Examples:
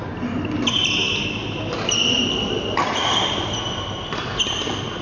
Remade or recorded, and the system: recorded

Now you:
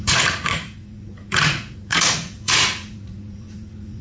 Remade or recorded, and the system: remade, vocoder, Vocos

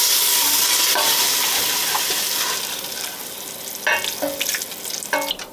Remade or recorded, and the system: recorded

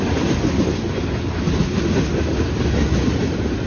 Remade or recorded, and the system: recorded